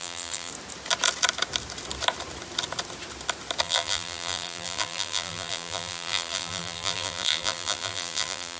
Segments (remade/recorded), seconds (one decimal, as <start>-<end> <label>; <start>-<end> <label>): 0.0-0.5 remade; 0.5-3.6 recorded; 3.6-8.6 remade